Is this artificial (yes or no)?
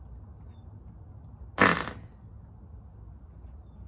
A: no